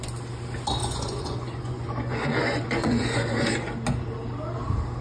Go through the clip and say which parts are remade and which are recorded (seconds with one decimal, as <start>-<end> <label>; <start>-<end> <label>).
0.0-0.8 recorded; 0.8-3.5 remade; 3.5-5.0 recorded